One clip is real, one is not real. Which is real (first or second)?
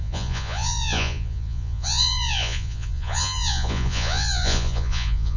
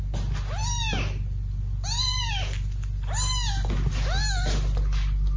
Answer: second